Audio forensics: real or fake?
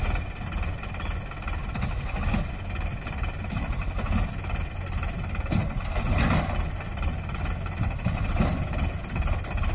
real